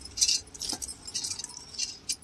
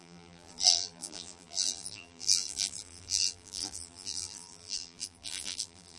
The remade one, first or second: second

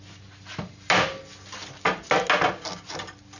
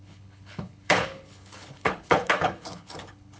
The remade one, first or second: second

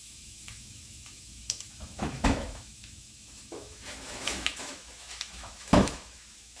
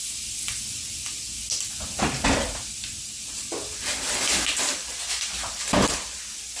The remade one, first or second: first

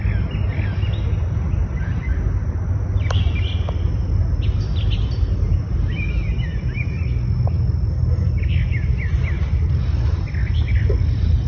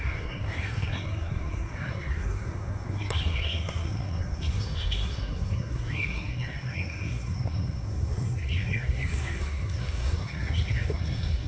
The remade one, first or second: second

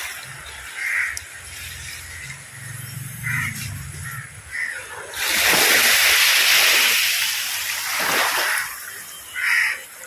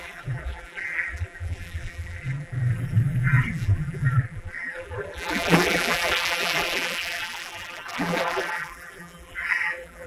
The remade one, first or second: second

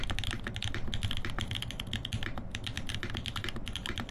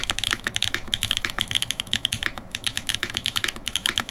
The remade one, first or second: second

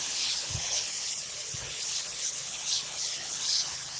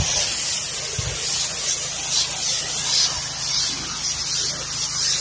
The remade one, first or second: first